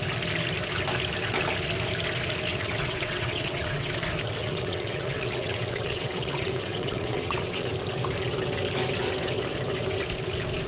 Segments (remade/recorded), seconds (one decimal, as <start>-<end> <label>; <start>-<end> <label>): 0.0-2.5 recorded; 2.5-3.9 remade; 3.9-4.4 recorded; 4.4-7.7 remade; 7.7-10.7 recorded